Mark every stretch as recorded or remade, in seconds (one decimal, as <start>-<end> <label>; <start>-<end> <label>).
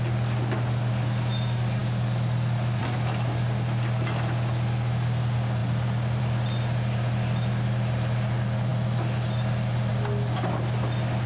0.0-11.3 recorded